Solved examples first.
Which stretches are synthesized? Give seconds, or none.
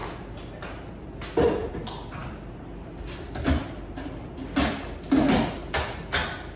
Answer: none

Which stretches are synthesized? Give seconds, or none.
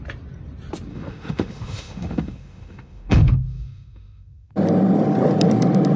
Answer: 0.9-4.5 (autoencoder, DAC-VAE)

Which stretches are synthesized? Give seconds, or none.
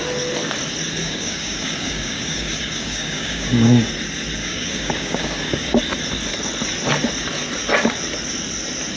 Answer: 1.0-3.9 (codec, DAC); 4.4-5.8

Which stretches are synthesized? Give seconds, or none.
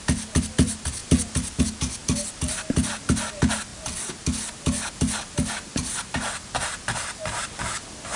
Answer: none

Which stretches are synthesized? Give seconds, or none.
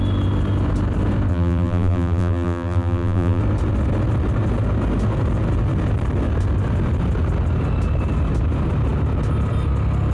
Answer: 1.3-3.4 (vocoder, BigVGAN v2)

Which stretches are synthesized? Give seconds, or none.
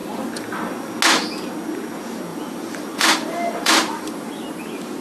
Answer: 0.0-0.9 (vocoder, BigVGAN v2); 2.3-4.1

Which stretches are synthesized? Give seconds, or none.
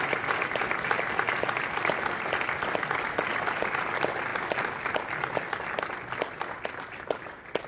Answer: none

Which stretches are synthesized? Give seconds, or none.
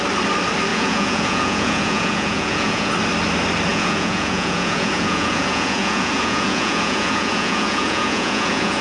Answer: 0.7-2.9 (vocoder, Vocos); 3.7-8.8